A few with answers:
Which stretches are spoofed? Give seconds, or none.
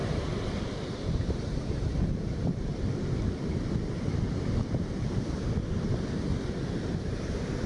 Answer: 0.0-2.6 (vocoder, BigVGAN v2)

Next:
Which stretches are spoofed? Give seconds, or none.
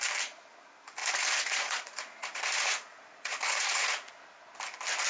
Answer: 1.0-4.1 (vocoder, Vocos)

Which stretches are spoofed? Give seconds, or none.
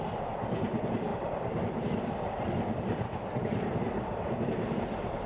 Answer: 1.1-2.4 (vocoder, BigVGAN v2)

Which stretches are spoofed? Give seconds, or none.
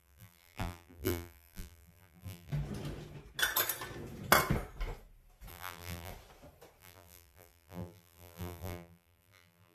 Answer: 0.0-2.5 (vocoder, BigVGAN v2); 5.5-6.1; 6.8-9.7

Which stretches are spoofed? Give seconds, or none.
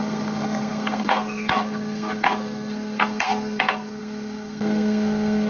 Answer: 0.0-5.5 (codec, SNAC)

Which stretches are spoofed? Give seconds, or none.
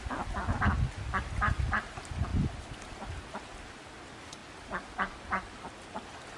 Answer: none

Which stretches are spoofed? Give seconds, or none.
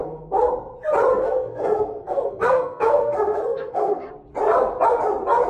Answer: 0.0-0.5 (codec, SNAC); 1.1-4.1